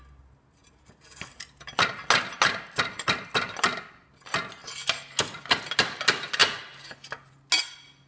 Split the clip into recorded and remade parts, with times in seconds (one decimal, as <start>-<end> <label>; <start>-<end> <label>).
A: 0.0-8.1 recorded

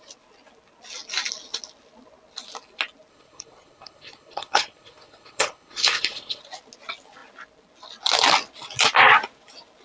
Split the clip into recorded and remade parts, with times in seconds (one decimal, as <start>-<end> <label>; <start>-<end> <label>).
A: 0.0-3.1 recorded; 3.1-6.4 remade; 6.4-9.8 recorded

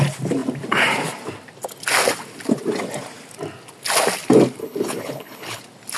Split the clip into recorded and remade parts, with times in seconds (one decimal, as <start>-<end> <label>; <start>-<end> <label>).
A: 0.0-4.6 recorded; 4.6-5.6 remade; 5.6-6.0 recorded

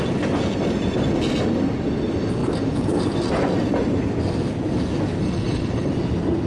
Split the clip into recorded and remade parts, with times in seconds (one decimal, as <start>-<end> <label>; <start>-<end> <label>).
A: 0.0-5.2 recorded; 5.2-5.9 remade; 5.9-6.5 recorded